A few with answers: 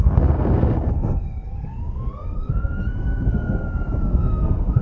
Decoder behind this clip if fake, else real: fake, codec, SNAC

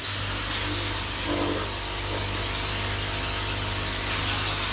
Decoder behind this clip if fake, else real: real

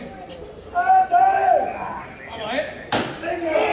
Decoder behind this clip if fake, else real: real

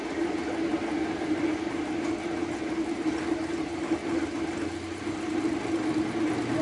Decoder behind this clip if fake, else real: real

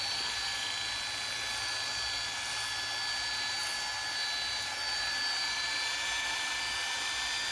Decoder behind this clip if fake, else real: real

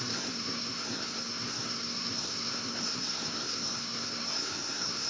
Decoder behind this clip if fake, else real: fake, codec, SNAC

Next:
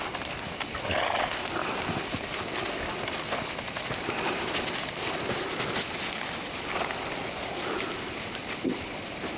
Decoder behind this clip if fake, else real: real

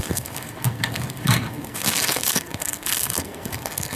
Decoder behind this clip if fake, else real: fake, codec, SNAC